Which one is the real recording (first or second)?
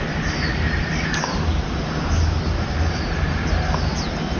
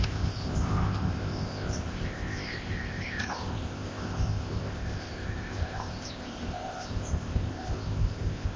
first